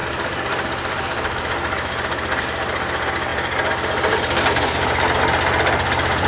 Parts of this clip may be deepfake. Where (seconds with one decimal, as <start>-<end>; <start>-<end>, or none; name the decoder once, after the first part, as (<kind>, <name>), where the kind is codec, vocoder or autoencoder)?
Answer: none